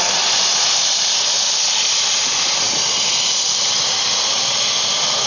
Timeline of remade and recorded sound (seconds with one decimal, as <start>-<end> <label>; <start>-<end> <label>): 0.0-5.3 recorded